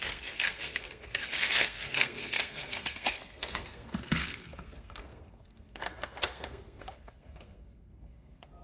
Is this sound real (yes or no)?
no